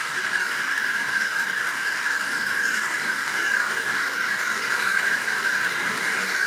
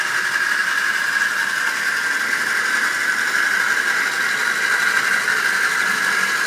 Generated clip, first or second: first